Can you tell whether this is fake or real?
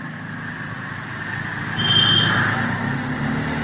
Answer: real